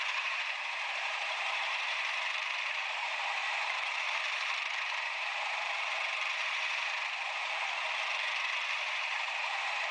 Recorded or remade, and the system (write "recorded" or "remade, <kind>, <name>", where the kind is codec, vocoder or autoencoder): remade, vocoder, BigVGAN v2